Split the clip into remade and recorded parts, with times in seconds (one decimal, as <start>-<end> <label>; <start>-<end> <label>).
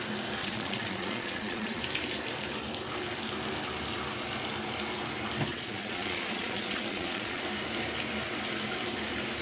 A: 0.0-0.4 recorded; 0.4-1.8 remade; 1.8-5.5 recorded; 5.5-7.4 remade; 7.4-9.4 recorded